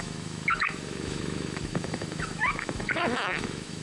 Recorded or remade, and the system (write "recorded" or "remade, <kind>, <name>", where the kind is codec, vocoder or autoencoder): remade, autoencoder, DAC-VAE